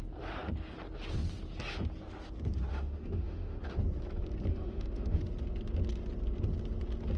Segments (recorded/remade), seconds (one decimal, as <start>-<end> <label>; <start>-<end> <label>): 0.0-2.7 recorded; 2.7-3.6 remade; 3.6-4.5 recorded; 4.5-5.2 remade; 5.2-7.2 recorded